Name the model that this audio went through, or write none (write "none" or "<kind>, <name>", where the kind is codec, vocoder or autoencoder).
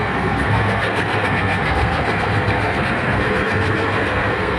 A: codec, SNAC